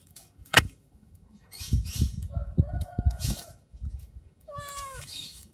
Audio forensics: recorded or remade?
remade